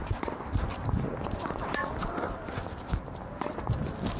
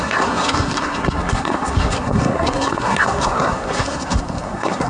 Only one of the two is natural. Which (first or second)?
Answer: first